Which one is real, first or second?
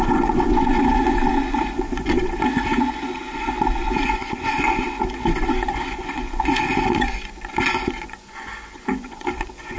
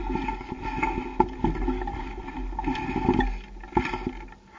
second